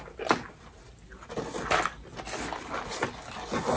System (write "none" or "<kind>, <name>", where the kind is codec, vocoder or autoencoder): none